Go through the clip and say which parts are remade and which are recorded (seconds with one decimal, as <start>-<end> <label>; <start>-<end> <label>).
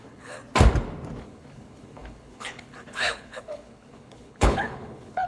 0.0-0.4 remade; 0.4-1.2 recorded; 1.2-5.3 remade